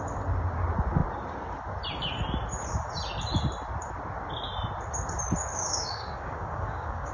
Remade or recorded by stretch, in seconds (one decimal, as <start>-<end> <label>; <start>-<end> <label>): 0.0-5.5 recorded; 5.5-7.1 remade